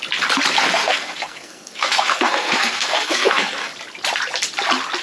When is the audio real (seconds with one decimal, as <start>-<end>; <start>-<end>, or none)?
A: 0.0-0.7; 3.7-5.0